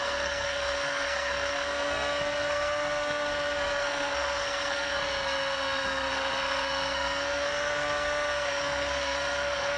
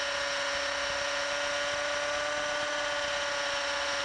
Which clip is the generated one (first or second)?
first